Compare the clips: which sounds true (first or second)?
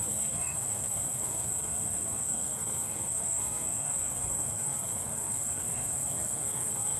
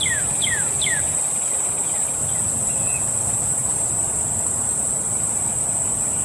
second